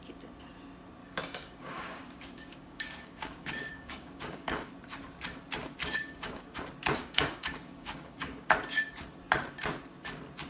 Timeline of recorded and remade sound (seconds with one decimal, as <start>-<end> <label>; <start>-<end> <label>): 0.0-1.0 recorded; 1.0-4.7 remade; 4.7-5.8 recorded; 5.8-6.6 remade; 6.6-7.0 recorded; 7.0-8.5 remade; 8.5-10.5 recorded